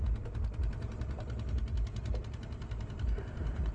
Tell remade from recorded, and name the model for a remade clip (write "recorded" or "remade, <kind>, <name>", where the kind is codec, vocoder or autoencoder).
recorded